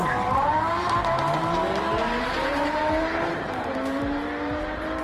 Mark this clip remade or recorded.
remade